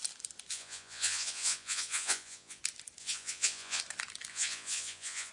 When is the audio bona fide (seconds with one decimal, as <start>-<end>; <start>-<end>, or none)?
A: 0.0-0.5; 2.6-3.0; 3.8-4.3

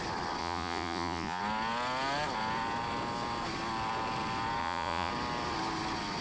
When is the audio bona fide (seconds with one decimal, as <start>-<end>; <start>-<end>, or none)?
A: 0.0-0.4; 1.4-4.6; 5.1-6.2

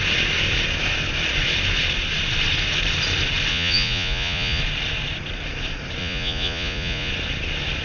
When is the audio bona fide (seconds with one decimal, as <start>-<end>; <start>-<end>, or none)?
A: 0.0-3.5; 4.6-6.0; 7.1-7.8